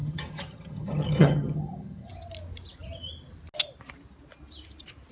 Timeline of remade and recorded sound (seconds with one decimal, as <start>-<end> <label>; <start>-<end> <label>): 0.0-2.1 remade; 2.1-5.1 recorded